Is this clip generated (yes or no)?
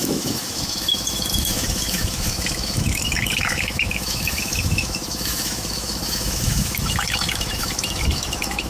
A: yes